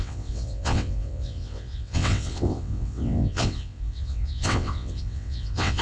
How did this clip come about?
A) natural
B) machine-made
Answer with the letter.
B